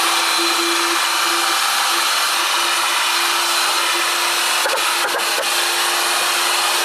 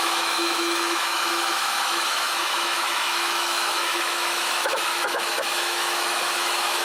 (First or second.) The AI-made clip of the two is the second